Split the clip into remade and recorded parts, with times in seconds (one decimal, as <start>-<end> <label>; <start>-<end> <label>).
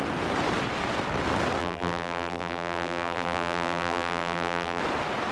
0.0-1.6 recorded; 1.6-4.8 remade; 4.8-5.3 recorded